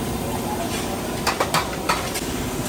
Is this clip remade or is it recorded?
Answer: recorded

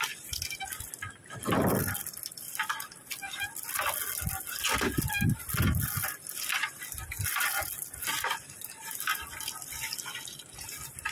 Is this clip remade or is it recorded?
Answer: recorded